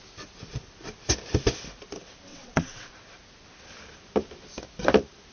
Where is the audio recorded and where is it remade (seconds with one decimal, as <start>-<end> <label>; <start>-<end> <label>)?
0.0-2.3 recorded; 2.3-2.9 remade; 2.9-5.3 recorded